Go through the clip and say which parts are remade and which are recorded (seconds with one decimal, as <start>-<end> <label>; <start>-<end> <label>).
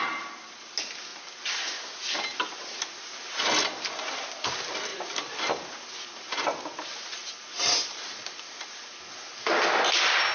0.0-4.9 recorded; 4.9-6.3 remade; 6.3-7.2 recorded; 7.2-8.8 remade; 8.8-10.3 recorded